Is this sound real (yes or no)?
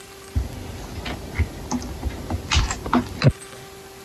yes